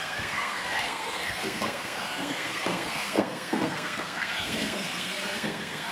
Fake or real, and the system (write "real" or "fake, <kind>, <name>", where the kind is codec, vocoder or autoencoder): fake, codec, SNAC